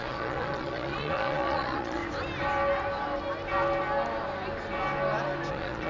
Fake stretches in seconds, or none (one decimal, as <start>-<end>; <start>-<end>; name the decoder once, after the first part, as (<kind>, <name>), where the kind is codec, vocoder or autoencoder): 0.0-2.0 (vocoder, Vocos); 5.5-5.9